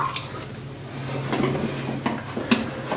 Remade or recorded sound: recorded